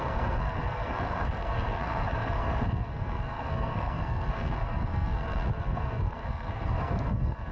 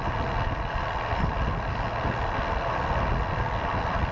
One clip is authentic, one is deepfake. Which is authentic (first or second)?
second